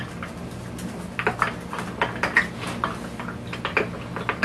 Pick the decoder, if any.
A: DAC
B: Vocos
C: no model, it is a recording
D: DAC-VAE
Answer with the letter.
C